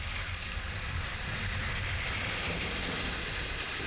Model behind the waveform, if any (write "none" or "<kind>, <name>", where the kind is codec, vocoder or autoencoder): none